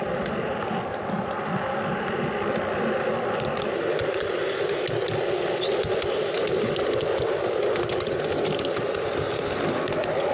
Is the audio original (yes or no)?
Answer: yes